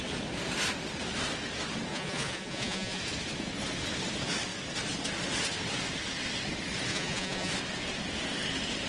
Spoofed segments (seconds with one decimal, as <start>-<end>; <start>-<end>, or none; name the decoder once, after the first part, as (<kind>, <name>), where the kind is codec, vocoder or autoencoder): 1.9-3.0 (vocoder, Vocos); 6.9-7.5